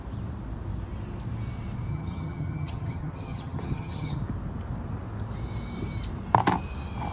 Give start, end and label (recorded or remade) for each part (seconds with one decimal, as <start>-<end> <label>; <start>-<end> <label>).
0.0-1.9 recorded; 1.9-4.2 remade; 4.2-7.1 recorded